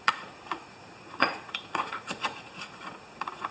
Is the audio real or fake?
fake